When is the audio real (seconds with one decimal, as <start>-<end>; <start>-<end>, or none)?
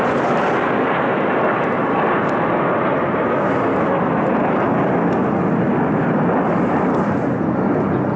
0.0-8.2